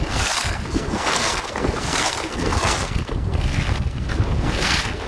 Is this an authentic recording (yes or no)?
no